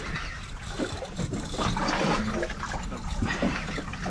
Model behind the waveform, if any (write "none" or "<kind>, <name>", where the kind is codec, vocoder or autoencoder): none